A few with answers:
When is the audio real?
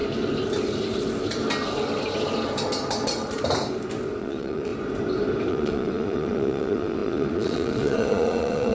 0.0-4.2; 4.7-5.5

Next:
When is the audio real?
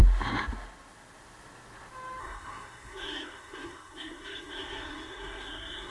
0.0-2.2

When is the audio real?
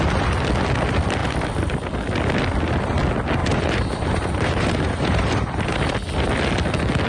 0.0-1.2; 1.8-3.4; 5.9-7.1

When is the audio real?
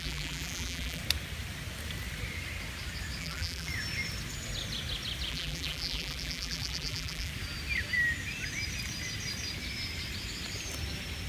1.0-3.2; 3.7-5.3; 7.3-11.3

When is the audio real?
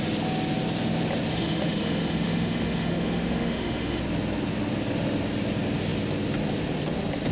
0.0-1.3; 4.0-7.3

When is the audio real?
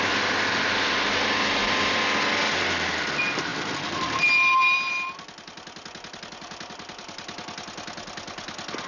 0.0-8.9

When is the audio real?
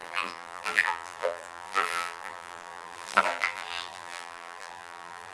none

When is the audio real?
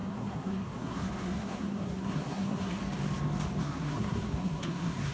2.8-3.6